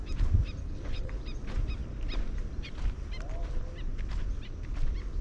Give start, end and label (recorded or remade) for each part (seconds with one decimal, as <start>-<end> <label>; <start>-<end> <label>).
0.0-0.6 recorded; 0.6-1.2 remade; 1.2-5.2 recorded